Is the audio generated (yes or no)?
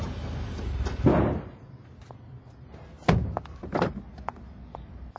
no